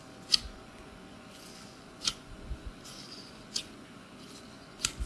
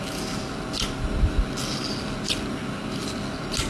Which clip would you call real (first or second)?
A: second